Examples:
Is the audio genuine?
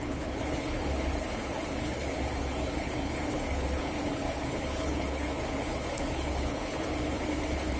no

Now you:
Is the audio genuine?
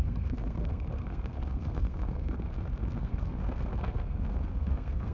no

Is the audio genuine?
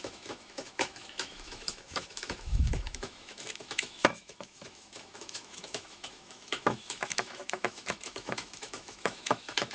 no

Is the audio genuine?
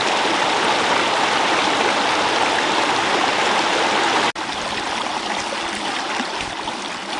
yes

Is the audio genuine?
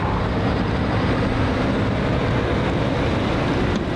yes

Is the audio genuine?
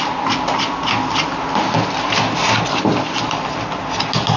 yes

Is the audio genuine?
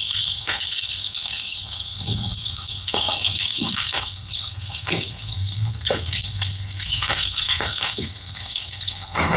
no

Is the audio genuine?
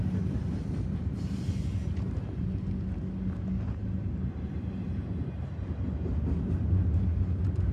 yes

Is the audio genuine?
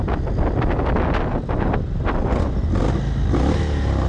yes